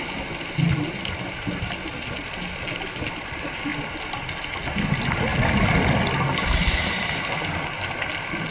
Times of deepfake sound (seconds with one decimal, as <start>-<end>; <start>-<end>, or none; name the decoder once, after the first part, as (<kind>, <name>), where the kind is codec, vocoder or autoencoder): none